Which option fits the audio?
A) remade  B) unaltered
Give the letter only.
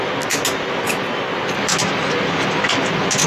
B